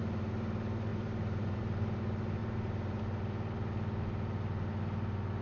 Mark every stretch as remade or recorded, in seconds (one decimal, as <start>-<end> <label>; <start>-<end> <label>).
0.0-0.9 recorded; 0.9-1.6 remade; 1.6-2.4 recorded; 2.4-3.0 remade; 3.0-5.4 recorded